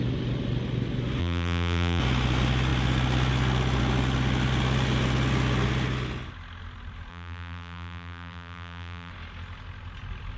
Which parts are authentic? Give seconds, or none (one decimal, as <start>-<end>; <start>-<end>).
0.0-1.2; 2.0-7.1; 9.1-10.4